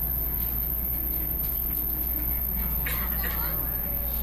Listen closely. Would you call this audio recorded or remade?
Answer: recorded